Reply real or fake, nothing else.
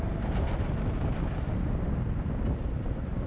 real